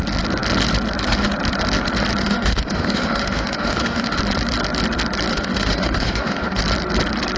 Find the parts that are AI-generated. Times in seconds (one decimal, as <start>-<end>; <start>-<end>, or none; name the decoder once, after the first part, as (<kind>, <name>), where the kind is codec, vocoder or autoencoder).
2.2-4.2 (autoencoder, DAC-VAE); 5.3-6.6